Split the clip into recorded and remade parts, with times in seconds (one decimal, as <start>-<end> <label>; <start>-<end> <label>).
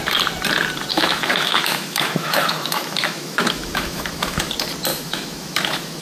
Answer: 0.0-0.9 recorded; 0.9-4.5 remade; 4.5-4.9 recorded; 4.9-6.0 remade